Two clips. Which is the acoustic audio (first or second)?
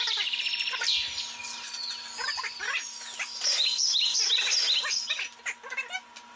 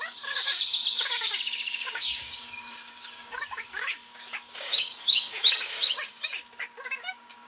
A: first